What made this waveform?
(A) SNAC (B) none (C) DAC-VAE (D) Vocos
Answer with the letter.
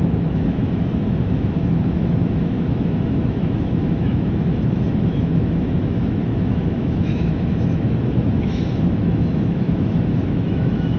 C